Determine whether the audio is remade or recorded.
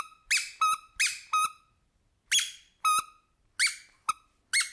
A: recorded